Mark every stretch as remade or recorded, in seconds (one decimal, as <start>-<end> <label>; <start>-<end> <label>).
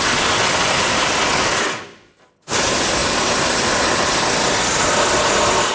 0.0-5.7 recorded